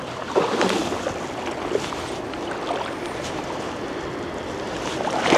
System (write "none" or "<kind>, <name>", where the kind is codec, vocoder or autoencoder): none